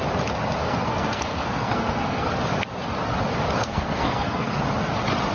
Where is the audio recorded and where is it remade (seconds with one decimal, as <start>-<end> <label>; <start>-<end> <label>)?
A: 0.0-0.6 recorded; 0.6-2.3 remade; 2.3-3.6 recorded; 3.6-4.6 remade; 4.6-5.3 recorded